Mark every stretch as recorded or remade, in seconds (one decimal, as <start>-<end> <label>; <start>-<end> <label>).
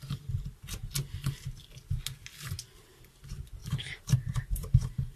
0.0-3.6 recorded; 3.6-5.2 remade